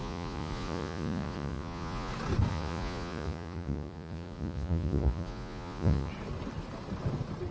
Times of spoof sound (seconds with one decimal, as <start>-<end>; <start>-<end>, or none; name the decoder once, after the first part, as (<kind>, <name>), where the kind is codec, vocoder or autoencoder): 0.0-2.1 (vocoder, Vocos); 2.5-6.1